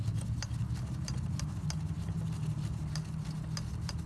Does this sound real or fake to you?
real